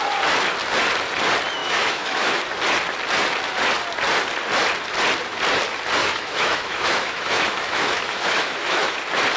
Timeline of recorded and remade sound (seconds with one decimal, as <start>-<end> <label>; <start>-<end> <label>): 0.0-1.6 recorded; 1.6-2.4 remade; 2.4-6.0 recorded; 6.0-9.0 remade; 9.0-9.4 recorded